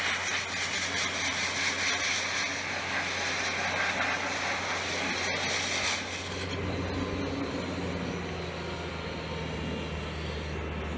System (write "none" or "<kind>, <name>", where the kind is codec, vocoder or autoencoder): none